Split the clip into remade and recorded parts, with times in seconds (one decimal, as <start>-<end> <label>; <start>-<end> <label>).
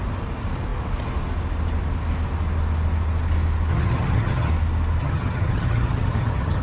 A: 0.0-3.7 recorded; 3.7-4.5 remade; 4.5-5.0 recorded; 5.0-6.6 remade